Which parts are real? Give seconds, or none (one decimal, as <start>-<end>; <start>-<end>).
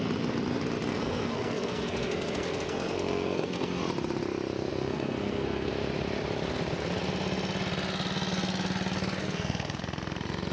0.0-0.9; 3.8-4.7; 5.7-9.2; 9.8-10.5